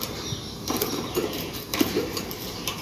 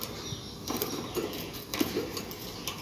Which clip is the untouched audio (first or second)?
second